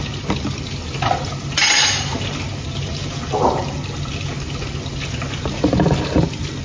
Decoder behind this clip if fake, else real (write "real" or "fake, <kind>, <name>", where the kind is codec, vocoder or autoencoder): real